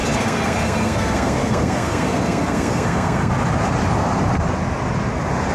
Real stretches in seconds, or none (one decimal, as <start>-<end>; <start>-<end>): 3.3-5.5